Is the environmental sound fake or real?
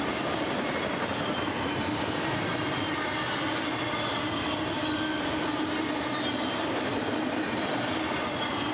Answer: fake